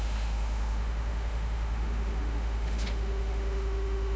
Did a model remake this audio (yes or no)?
yes